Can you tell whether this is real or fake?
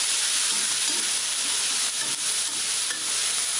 real